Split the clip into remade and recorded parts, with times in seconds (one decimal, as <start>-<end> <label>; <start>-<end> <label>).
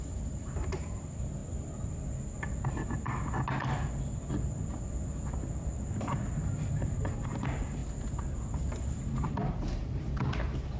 0.0-1.4 remade; 1.4-6.7 recorded; 6.7-7.8 remade; 7.8-8.4 recorded; 8.4-10.8 remade